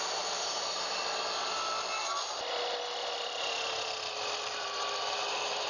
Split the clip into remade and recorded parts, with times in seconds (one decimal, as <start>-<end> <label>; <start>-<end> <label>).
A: 0.0-1.0 remade; 1.0-4.4 recorded; 4.4-5.7 remade